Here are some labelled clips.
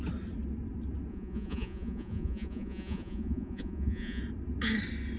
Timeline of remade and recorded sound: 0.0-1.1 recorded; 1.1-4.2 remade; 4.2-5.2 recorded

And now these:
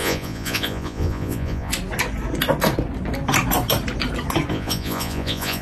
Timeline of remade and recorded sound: 0.0-1.7 remade; 1.7-4.5 recorded; 4.5-5.6 remade

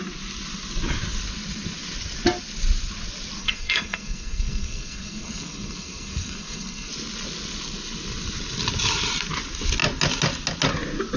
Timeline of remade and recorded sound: 0.0-3.4 recorded; 3.4-6.9 remade; 6.9-11.2 recorded

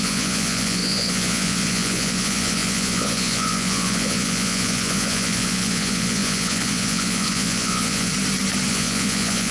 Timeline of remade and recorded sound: 0.0-8.1 remade; 8.1-8.7 recorded; 8.7-9.5 remade

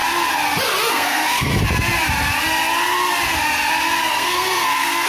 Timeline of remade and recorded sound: 0.0-0.9 recorded; 0.9-1.5 remade; 1.5-4.1 recorded; 4.1-5.1 remade

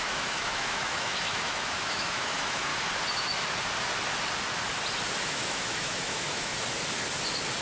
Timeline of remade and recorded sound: 0.0-2.7 remade; 2.7-5.3 recorded; 5.3-6.5 remade; 6.5-7.6 recorded